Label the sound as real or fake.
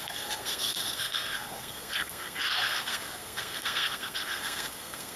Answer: fake